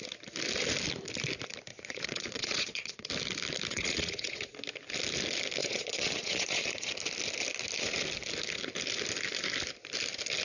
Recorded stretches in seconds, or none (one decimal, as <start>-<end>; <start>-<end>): 0.0-1.7; 3.1-3.7; 4.5-5.6; 6.9-10.4